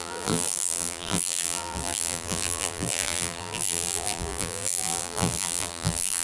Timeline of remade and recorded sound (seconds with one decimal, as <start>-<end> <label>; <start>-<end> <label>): 0.0-6.2 remade